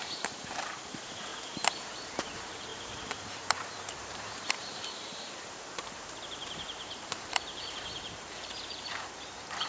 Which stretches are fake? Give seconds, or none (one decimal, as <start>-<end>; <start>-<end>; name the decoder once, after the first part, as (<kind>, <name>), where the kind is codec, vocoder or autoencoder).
0.0-1.3 (vocoder, BigVGAN v2); 1.9-9.7

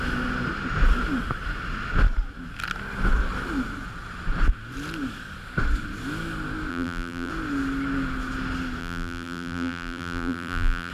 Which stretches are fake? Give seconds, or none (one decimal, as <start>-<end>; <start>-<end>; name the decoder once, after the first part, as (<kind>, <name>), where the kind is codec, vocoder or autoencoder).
6.7-7.3 (vocoder, BigVGAN v2); 8.8-10.9

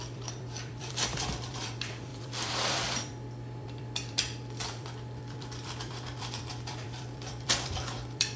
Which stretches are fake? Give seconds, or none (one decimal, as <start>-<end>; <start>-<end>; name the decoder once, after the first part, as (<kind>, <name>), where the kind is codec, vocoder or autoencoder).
0.0-8.4 (vocoder, BigVGAN v2)